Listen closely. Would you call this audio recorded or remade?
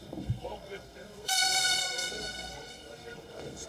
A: remade